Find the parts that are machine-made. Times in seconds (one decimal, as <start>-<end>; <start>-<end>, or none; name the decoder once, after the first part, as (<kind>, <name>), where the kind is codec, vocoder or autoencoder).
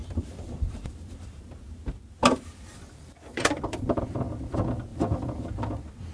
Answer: 0.0-1.4 (vocoder, BigVGAN v2); 2.2-4.0; 4.9-6.1